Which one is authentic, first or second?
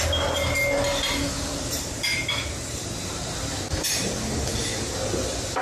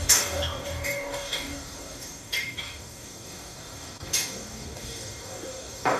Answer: first